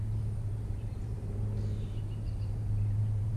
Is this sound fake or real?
fake